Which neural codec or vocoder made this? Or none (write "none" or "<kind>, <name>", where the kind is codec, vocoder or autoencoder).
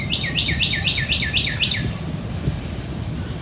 none